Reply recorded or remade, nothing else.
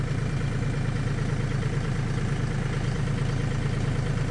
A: recorded